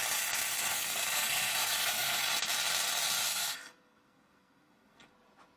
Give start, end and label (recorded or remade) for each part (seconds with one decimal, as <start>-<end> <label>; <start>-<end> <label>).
0.0-0.5 recorded; 0.5-2.2 remade; 2.2-3.3 recorded; 3.3-5.1 remade; 5.1-5.6 recorded